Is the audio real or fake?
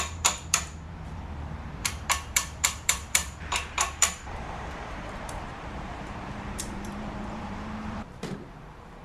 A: fake